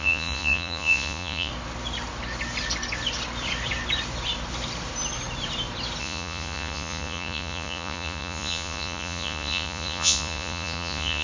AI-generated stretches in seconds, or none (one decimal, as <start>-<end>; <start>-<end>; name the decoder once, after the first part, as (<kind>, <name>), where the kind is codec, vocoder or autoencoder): 0.0-1.5 (vocoder, Vocos); 6.0-11.2